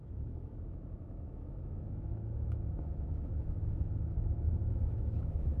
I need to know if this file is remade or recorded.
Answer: remade